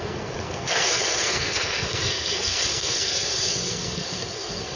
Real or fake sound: fake